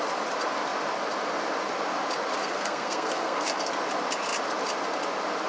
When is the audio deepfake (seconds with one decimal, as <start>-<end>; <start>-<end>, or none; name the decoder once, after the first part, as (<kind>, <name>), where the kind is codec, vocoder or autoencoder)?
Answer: 2.4-3.7 (codec, SNAC)

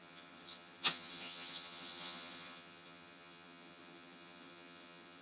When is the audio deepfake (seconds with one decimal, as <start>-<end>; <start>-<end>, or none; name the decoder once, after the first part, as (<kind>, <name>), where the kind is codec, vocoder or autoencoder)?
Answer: 0.0-5.2 (vocoder, HiFi-GAN)

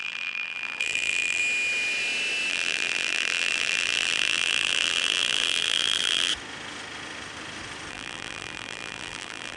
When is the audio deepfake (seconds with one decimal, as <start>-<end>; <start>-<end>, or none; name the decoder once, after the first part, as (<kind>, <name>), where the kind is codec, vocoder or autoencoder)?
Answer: 0.0-1.4 (vocoder, BigVGAN v2); 2.5-6.3; 7.9-9.6

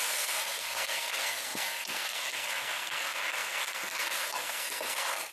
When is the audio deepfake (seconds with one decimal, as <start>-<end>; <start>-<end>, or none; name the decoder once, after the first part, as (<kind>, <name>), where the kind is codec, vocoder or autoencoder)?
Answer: 0.0-5.3 (codec, SNAC)